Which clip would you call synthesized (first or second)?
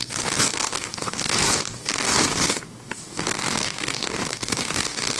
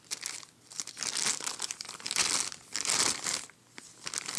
first